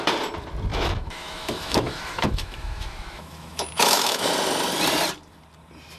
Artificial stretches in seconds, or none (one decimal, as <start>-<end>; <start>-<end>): 0.7-4.3